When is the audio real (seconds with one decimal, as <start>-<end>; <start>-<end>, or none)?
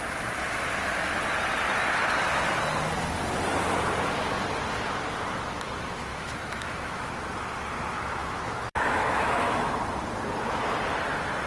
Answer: 0.0-6.1; 7.1-8.2; 9.7-11.5